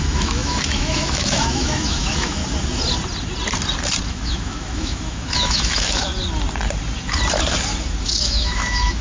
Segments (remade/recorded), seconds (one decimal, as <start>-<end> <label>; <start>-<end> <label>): 0.0-2.4 remade; 2.4-4.1 recorded; 4.1-6.1 remade; 6.1-8.0 recorded; 8.0-9.0 remade